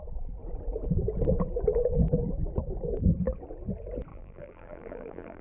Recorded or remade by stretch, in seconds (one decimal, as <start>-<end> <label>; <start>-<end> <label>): 0.0-4.1 recorded; 4.1-5.4 remade